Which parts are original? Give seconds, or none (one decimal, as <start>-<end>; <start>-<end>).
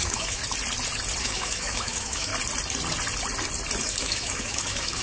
0.4-1.2; 2.3-3.8